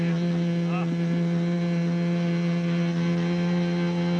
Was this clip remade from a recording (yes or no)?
no